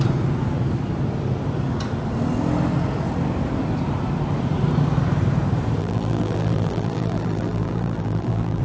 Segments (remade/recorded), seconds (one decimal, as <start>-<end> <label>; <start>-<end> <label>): 0.0-5.8 recorded; 5.8-8.6 remade